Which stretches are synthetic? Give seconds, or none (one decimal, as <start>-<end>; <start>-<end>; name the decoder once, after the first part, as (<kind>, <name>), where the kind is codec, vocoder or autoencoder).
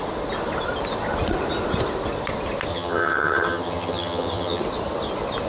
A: 2.7-4.6 (vocoder, HiFi-GAN)